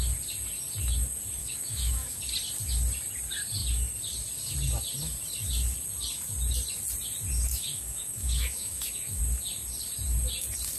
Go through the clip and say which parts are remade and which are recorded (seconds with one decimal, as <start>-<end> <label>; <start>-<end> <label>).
0.0-1.4 recorded; 1.4-2.2 remade; 2.2-7.5 recorded; 7.5-9.2 remade; 9.2-10.8 recorded